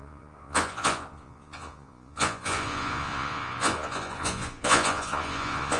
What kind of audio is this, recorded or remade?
remade